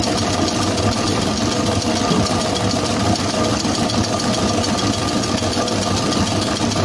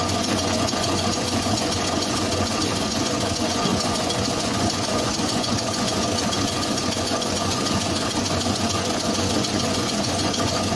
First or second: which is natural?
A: first